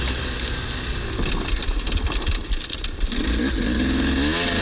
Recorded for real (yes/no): yes